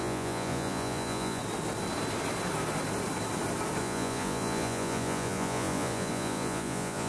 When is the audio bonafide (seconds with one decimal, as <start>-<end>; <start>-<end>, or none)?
1.4-3.8